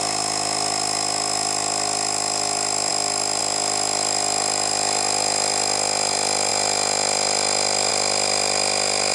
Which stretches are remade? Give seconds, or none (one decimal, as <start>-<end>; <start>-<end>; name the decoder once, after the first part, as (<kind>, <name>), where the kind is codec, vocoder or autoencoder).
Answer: none